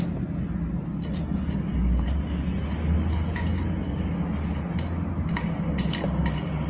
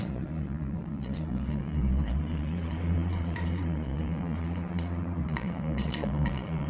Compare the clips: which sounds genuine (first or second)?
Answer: first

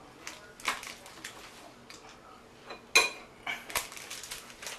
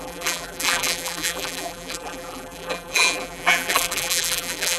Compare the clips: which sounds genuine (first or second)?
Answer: first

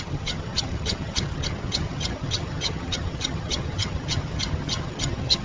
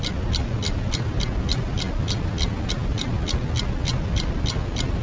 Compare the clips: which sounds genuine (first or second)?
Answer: second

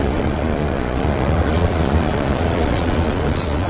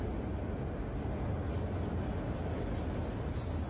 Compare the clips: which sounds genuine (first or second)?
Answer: second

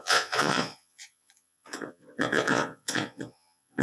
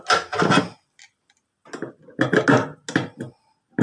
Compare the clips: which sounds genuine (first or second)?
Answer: second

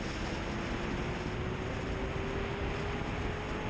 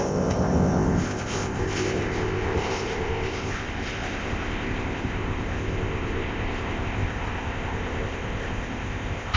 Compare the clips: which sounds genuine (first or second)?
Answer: first